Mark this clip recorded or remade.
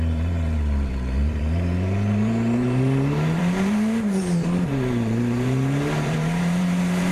remade